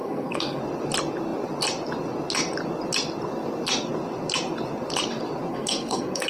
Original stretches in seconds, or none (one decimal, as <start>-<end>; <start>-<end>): 0.6-5.5